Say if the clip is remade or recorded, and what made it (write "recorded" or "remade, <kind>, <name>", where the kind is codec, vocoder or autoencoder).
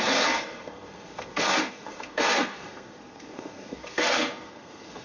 remade, codec, SNAC